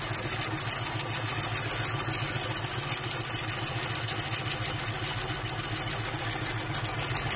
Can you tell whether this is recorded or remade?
recorded